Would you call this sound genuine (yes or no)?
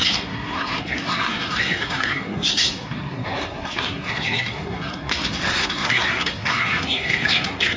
no